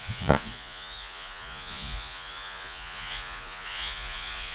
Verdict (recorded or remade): remade